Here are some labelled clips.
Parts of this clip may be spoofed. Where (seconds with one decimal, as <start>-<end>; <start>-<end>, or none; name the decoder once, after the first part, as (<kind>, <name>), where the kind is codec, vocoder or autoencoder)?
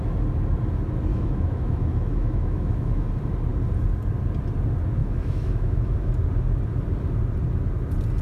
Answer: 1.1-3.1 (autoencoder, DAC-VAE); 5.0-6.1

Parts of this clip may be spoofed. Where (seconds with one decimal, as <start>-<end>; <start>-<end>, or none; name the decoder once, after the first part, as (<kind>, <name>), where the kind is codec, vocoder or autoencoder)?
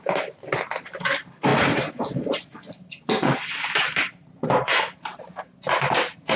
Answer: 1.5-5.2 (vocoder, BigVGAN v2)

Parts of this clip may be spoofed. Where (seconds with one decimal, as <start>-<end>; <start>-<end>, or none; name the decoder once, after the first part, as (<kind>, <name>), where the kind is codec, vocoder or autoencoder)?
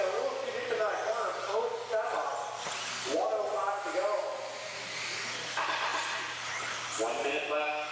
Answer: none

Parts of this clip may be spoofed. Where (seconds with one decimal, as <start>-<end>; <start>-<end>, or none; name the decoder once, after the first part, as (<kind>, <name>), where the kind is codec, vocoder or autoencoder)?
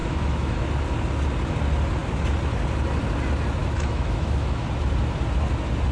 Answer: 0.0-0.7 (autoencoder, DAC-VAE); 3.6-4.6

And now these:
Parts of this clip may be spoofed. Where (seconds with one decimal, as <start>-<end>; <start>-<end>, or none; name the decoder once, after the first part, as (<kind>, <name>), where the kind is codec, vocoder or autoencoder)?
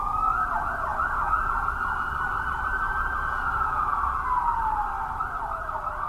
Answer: none